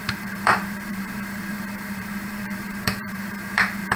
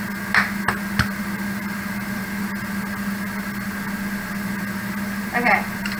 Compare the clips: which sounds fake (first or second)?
first